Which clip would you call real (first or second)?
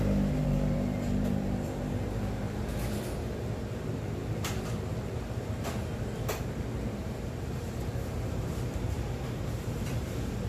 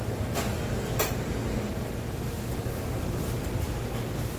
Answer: second